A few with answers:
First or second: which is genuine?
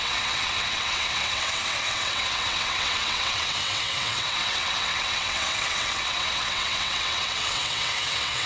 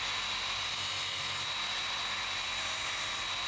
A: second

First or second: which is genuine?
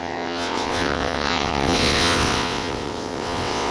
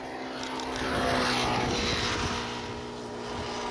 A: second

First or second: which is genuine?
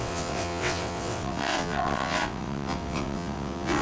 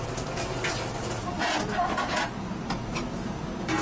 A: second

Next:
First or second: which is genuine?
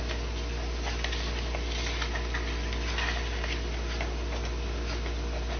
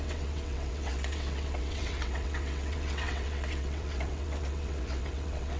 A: first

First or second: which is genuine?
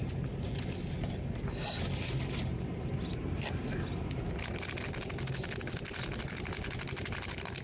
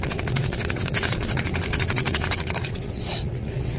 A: first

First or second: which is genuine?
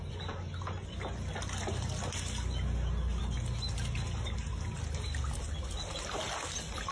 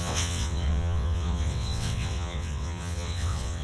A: first